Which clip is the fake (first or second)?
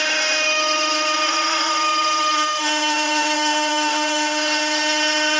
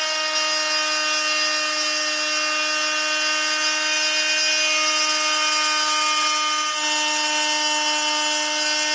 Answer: first